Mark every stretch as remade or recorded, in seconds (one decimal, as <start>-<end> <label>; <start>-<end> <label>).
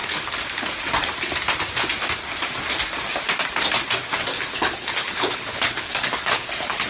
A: 0.0-4.3 recorded; 4.3-6.9 remade